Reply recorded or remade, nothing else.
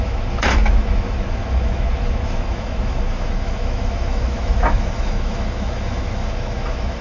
remade